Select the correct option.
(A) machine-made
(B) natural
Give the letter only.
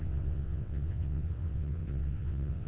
A